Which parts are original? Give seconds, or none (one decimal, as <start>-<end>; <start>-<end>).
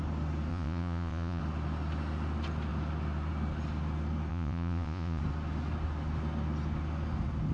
0.0-0.5; 1.4-4.3; 5.2-7.5